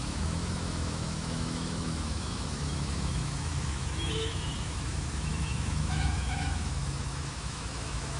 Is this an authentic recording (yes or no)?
no